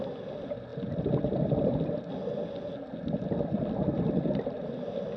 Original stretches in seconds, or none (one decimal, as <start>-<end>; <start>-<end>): 0.0-5.2